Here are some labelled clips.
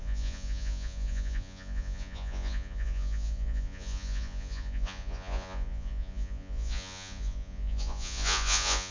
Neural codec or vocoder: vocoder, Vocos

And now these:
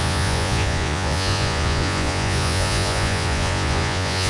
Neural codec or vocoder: vocoder, Vocos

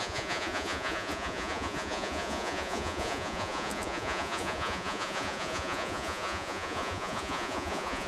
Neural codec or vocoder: vocoder, Vocos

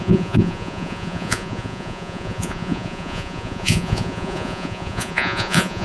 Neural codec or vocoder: vocoder, Vocos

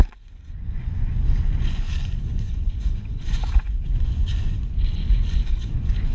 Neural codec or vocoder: vocoder, Vocos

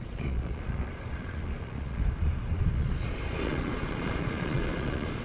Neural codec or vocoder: vocoder, Vocos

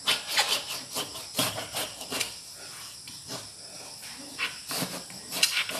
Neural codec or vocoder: none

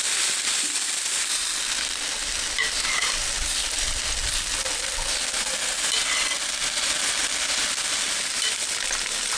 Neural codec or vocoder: none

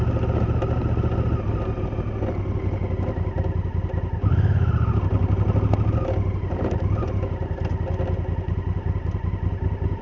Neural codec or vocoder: none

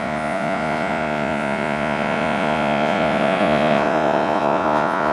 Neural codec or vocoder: vocoder, Vocos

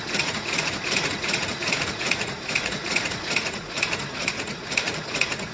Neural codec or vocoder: vocoder, Vocos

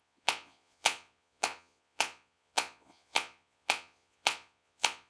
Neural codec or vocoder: vocoder, Vocos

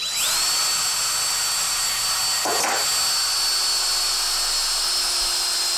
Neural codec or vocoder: none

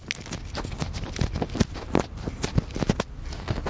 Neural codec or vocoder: none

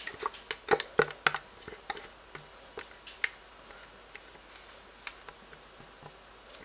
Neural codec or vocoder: none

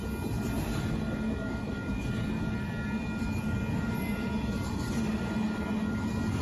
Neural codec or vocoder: none